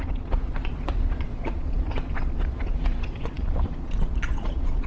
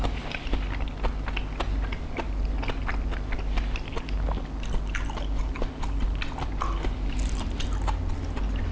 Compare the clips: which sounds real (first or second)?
second